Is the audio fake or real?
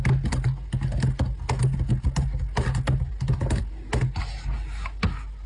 real